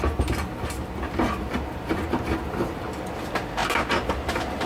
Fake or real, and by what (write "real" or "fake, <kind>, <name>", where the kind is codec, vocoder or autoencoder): real